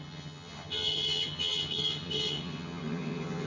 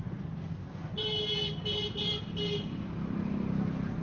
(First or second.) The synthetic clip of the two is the first